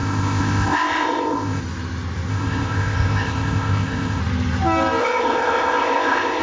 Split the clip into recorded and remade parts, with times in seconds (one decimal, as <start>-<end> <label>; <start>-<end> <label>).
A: 0.0-1.6 remade; 1.6-2.3 recorded; 2.3-4.2 remade; 4.2-5.0 recorded; 5.0-6.4 remade